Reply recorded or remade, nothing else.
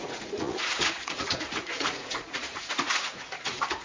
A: remade